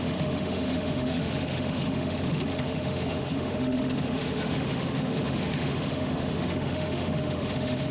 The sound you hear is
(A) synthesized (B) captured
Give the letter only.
A